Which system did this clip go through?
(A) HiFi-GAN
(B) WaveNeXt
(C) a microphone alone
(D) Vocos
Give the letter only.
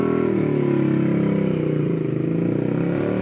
C